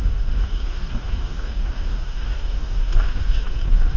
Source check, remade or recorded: remade